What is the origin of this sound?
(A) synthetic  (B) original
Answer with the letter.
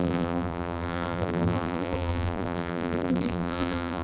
A